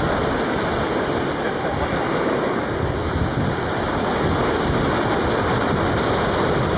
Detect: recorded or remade recorded